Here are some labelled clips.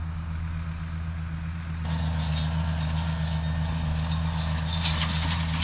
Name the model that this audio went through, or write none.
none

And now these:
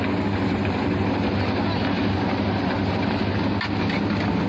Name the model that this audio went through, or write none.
none